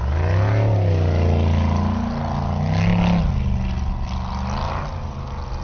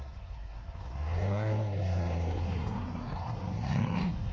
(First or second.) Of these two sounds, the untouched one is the first